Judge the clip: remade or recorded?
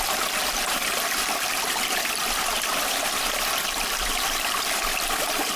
recorded